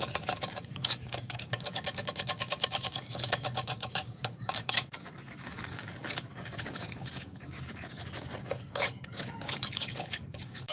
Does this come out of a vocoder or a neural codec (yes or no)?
yes